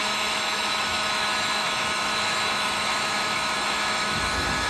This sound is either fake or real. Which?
fake